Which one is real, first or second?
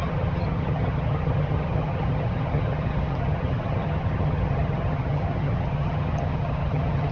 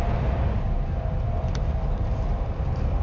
second